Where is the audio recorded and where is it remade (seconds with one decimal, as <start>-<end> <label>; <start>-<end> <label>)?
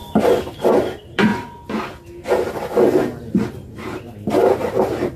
0.0-0.7 recorded; 0.7-1.3 remade; 1.3-4.4 recorded; 4.4-5.2 remade